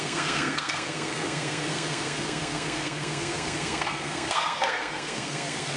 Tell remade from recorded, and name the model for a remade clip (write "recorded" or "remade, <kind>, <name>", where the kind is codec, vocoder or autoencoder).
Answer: remade, codec, SNAC